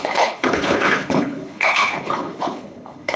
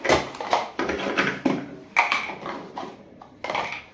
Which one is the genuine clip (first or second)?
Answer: second